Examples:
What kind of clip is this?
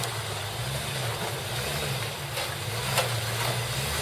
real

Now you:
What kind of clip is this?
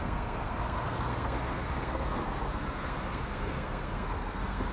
fake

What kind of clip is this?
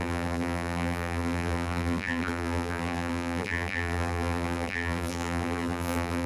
fake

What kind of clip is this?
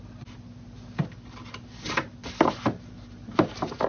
real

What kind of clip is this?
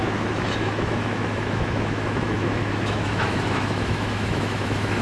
fake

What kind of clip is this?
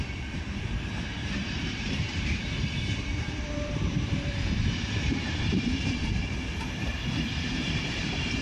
fake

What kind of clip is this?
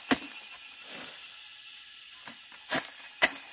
real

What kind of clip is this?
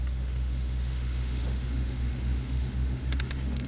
fake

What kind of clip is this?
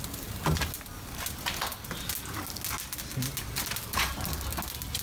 real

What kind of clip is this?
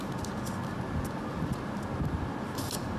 real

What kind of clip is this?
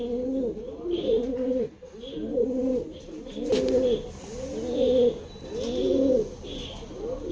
real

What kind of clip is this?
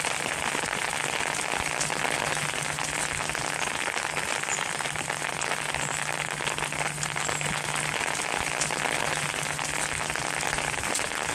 real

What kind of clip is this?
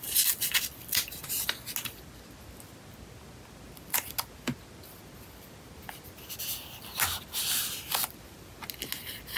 real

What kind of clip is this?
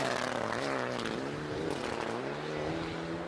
real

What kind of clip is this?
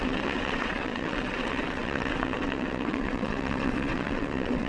fake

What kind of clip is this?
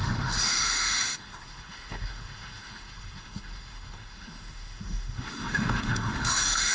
fake